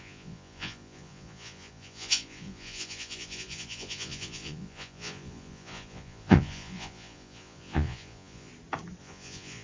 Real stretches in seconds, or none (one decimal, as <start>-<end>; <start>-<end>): 8.5-9.0